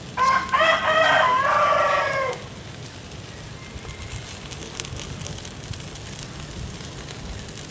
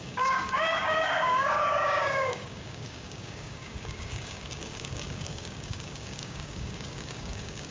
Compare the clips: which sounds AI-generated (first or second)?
second